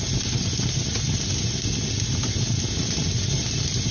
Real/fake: real